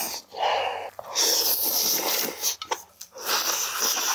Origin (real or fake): real